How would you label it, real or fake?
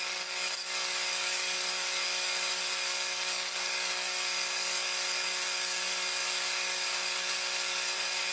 fake